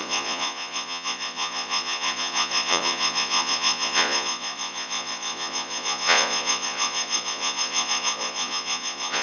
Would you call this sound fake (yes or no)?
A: yes